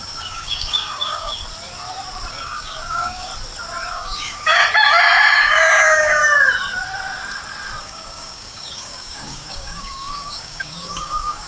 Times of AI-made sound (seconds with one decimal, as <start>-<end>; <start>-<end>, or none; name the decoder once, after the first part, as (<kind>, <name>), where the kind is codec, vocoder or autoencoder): 0.0-1.4 (codec, DAC); 2.3-3.3; 3.9-4.6; 5.4-6.2; 7.8-11.5